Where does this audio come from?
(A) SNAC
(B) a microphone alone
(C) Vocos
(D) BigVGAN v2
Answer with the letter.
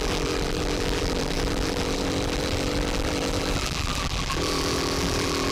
D